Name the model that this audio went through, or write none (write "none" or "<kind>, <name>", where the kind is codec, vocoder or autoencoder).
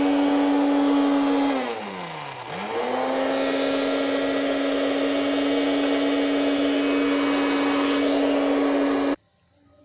none